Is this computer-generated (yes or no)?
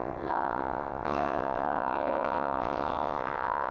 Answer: yes